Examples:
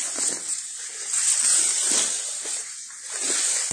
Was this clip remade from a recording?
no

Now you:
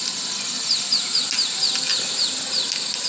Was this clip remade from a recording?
no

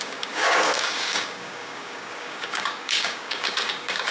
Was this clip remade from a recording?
yes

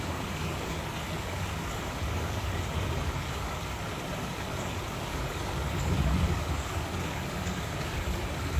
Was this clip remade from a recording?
yes